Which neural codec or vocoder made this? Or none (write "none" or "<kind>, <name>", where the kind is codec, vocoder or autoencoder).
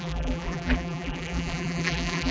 vocoder, BigVGAN v2